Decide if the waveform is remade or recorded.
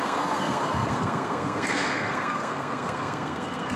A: remade